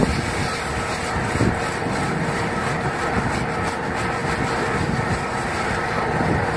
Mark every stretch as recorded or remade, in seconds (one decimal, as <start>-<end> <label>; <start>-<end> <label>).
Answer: 0.0-6.6 recorded